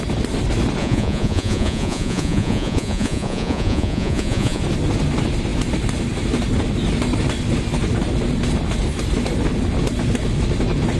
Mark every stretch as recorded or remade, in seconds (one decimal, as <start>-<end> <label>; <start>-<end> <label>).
0.0-0.8 recorded; 0.8-4.6 remade; 4.6-11.0 recorded

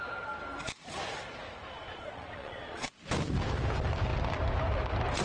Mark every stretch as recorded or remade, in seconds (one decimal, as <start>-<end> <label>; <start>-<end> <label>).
0.0-1.8 recorded; 1.8-2.9 remade; 2.9-5.2 recorded

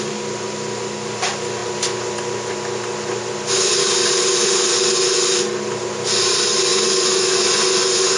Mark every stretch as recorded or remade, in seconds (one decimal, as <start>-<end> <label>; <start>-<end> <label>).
0.0-6.7 recorded; 6.7-8.2 remade